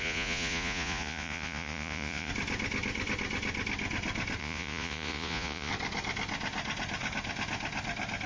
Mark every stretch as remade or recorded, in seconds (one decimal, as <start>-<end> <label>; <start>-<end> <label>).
0.0-2.3 remade; 2.3-4.4 recorded; 4.4-5.7 remade; 5.7-8.3 recorded